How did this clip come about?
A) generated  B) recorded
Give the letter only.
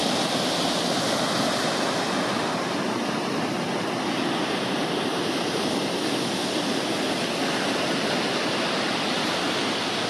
B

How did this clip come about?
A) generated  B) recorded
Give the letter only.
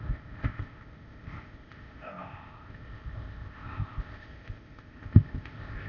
A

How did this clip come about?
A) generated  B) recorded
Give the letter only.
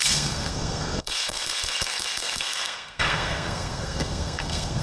A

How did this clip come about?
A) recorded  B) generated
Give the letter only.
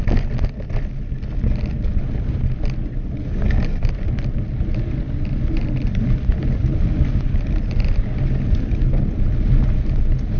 A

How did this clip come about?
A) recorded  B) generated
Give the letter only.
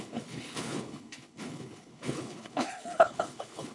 B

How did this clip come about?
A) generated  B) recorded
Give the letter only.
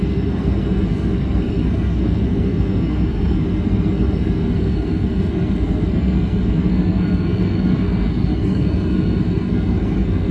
A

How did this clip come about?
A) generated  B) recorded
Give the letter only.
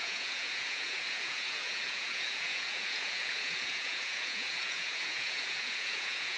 A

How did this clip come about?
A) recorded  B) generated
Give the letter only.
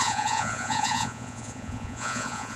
B